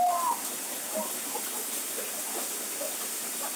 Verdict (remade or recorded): recorded